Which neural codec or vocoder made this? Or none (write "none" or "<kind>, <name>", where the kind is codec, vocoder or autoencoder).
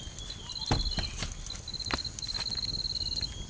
none